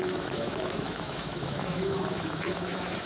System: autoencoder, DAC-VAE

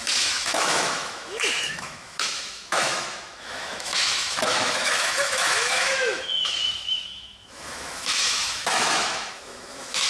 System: autoencoder, DAC-VAE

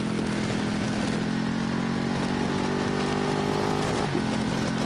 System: none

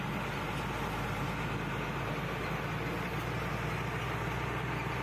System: none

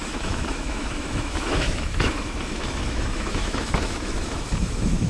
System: autoencoder, DAC-VAE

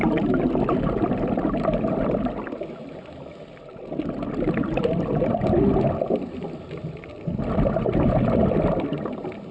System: none